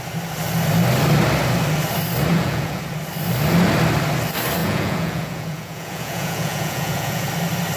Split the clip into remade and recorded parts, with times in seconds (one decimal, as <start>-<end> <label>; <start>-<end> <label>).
0.0-2.3 recorded; 2.3-2.8 remade; 2.8-4.6 recorded; 4.6-7.3 remade; 7.3-7.8 recorded